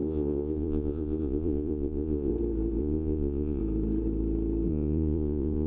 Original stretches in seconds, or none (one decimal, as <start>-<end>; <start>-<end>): 2.3-2.8; 3.6-4.7